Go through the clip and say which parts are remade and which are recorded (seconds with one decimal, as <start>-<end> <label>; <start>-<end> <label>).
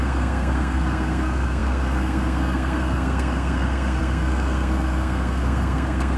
0.0-6.2 remade